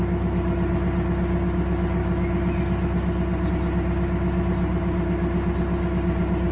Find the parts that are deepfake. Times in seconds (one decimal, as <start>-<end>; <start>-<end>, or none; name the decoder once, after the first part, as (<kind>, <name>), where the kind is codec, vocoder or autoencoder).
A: none